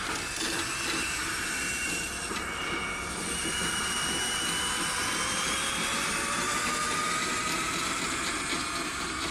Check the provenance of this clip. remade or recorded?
recorded